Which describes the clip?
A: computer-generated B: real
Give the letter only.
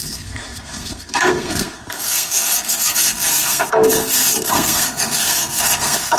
A